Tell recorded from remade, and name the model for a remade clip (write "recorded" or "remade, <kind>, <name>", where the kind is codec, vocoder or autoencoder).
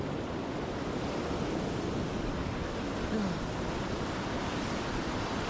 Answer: recorded